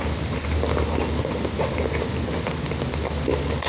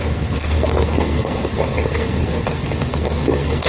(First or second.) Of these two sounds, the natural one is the first